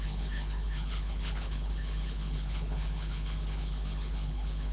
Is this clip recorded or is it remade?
remade